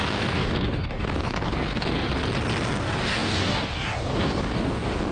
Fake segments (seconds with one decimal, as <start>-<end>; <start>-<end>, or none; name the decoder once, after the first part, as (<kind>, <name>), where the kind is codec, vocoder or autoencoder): 0.0-2.1 (codec, DAC); 2.7-5.1